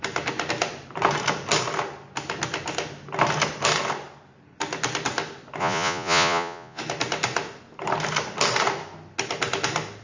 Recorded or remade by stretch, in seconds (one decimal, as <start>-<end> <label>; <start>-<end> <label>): 0.0-5.6 recorded; 5.6-6.8 remade; 6.8-10.0 recorded